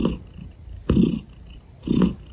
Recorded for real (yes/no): yes